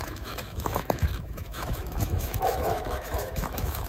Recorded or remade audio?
remade